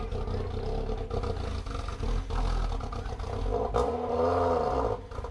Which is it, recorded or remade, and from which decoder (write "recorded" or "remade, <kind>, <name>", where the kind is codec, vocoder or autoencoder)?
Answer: recorded